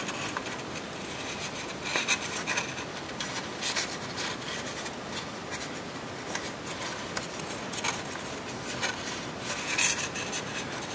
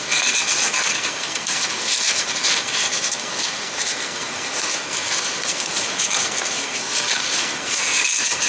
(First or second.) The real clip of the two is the first